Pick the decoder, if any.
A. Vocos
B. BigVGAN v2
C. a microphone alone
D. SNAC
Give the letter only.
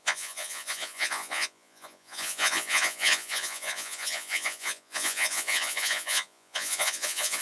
A